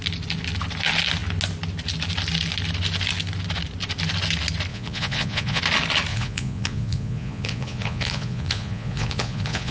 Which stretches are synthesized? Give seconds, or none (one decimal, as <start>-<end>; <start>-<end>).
4.7-5.6; 6.1-9.7